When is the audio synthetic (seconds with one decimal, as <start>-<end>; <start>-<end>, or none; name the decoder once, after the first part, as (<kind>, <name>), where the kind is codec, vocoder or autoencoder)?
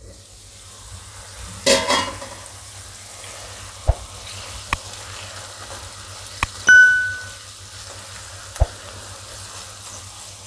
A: none